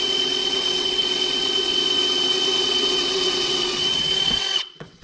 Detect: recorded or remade remade